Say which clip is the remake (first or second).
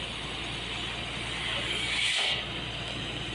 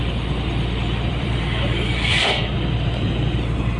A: second